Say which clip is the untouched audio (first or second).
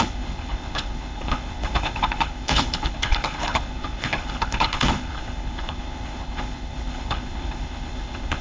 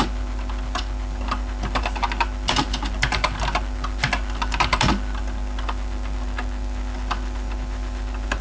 second